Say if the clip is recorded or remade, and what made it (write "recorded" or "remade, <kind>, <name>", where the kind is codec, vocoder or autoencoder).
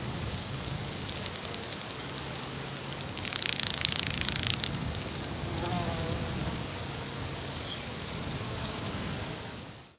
remade, codec, DAC